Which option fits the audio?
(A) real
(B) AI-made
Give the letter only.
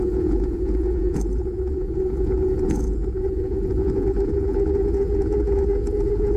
B